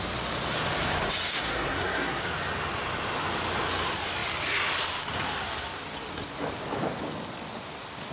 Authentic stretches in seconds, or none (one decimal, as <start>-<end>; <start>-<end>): 0.0-1.3; 2.2-8.1